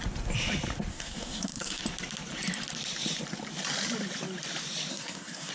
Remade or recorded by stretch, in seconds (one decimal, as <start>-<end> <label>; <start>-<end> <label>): 0.0-0.9 recorded; 0.9-1.8 remade; 1.8-4.9 recorded; 4.9-5.5 remade